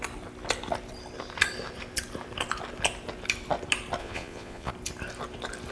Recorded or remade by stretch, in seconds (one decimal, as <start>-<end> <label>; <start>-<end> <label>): 0.0-4.0 recorded; 4.0-4.7 remade; 4.7-5.7 recorded